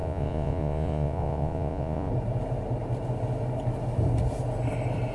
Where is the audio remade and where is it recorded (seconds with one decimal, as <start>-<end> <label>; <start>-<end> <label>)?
0.0-2.1 remade; 2.1-5.1 recorded